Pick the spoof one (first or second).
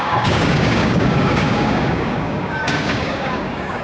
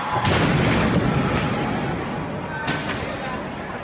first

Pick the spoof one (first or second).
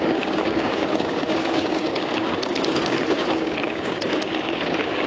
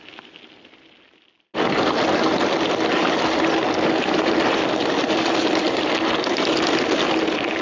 first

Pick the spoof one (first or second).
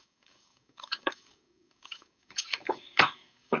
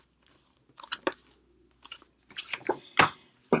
first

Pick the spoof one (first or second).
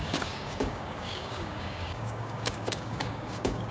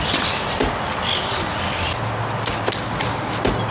first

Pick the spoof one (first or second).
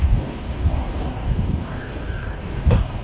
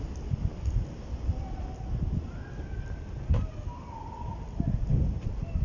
first